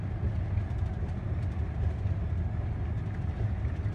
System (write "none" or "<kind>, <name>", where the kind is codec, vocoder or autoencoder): none